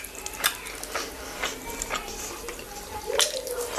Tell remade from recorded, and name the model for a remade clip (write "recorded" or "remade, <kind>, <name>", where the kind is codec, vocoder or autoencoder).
recorded